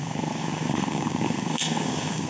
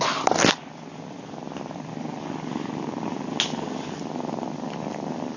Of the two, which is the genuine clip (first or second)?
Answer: second